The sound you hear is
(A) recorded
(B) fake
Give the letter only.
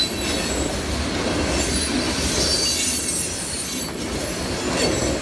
A